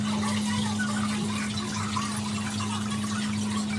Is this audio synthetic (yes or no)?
no